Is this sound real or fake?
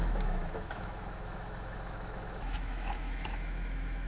fake